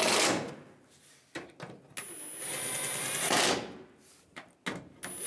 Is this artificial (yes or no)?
no